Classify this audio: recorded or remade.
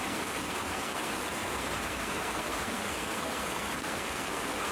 remade